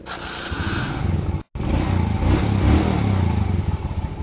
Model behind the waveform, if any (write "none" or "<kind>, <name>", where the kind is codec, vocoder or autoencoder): none